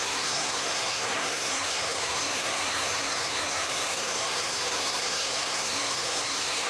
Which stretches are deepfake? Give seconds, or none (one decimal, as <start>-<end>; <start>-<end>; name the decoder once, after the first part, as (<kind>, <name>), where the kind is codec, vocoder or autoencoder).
0.0-6.7 (codec, SNAC)